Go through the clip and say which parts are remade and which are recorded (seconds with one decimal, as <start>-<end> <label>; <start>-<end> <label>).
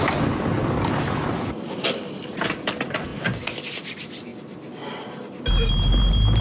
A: 0.0-6.4 recorded